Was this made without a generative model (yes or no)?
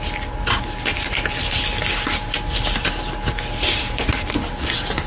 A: yes